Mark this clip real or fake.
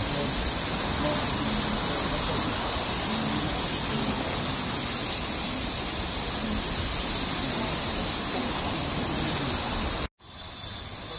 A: real